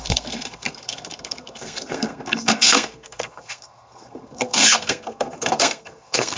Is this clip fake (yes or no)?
yes